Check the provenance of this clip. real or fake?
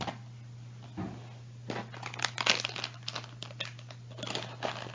real